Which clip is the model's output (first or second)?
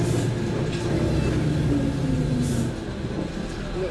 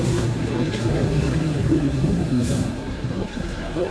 second